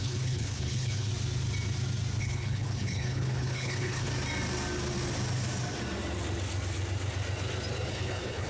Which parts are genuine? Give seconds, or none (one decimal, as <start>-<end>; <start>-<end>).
1.1-2.2; 4.1-7.9